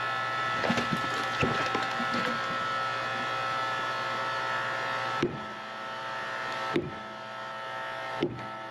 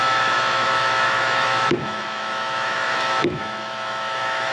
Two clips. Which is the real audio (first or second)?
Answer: first